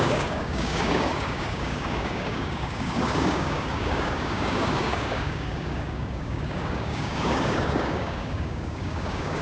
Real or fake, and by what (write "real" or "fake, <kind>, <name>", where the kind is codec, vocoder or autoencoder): fake, codec, DAC